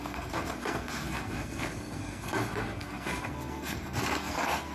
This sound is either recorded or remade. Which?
remade